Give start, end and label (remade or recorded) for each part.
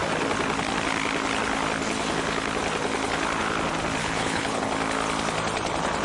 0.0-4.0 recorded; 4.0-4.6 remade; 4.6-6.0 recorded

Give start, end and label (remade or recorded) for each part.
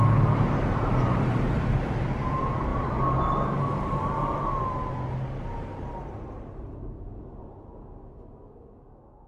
0.0-9.3 recorded